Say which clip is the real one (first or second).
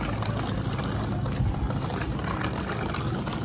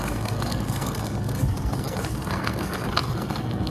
first